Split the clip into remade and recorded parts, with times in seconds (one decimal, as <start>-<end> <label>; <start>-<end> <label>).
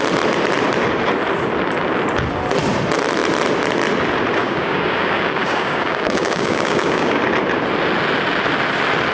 0.0-4.4 recorded; 4.4-7.2 remade; 7.2-9.1 recorded